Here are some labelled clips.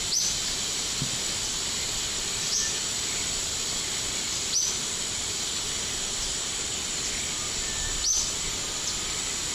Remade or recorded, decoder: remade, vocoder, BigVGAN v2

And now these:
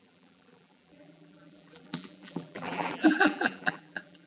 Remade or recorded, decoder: remade, vocoder, BigVGAN v2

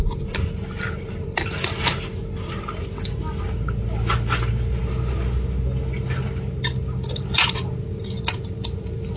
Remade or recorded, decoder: recorded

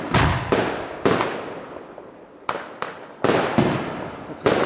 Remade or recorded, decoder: recorded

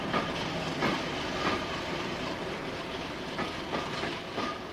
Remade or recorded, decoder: recorded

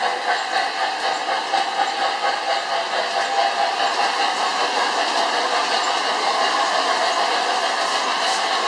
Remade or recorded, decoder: recorded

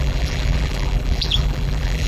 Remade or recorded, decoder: remade, vocoder, BigVGAN v2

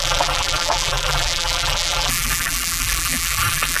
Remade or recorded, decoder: remade, vocoder, BigVGAN v2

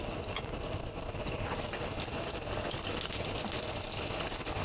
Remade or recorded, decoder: recorded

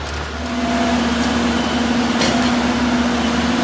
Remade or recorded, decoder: recorded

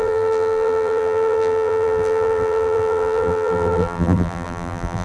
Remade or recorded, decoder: remade, vocoder, BigVGAN v2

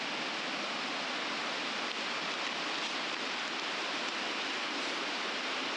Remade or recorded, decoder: recorded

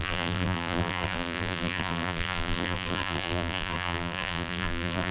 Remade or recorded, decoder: remade, vocoder, BigVGAN v2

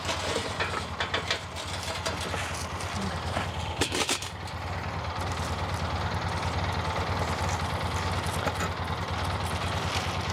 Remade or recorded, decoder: recorded